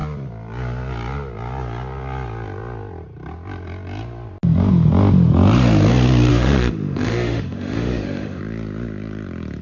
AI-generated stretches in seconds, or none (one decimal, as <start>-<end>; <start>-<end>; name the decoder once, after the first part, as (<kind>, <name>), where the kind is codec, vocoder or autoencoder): 6.3-8.4 (autoencoder, DAC-VAE)